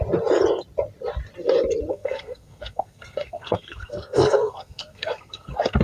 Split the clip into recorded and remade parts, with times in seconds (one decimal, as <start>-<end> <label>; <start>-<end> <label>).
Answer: 0.0-1.9 recorded; 1.9-5.8 remade